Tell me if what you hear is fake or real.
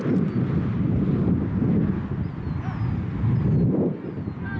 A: real